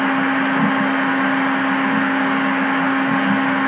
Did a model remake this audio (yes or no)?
no